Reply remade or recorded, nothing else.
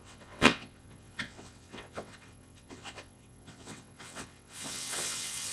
remade